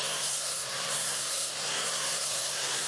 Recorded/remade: remade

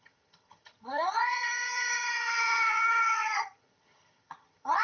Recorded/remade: remade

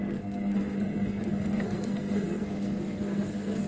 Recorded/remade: remade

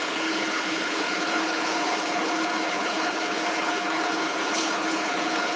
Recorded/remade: remade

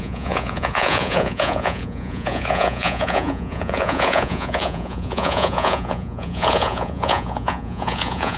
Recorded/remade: remade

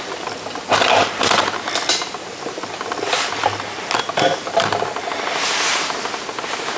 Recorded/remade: recorded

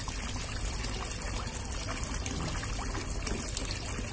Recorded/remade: recorded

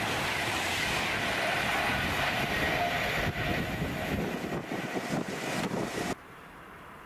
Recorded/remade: recorded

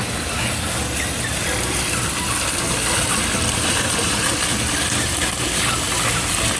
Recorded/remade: recorded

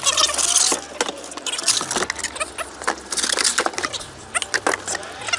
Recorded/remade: recorded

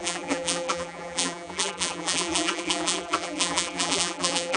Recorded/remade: remade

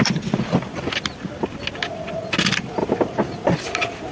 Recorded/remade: recorded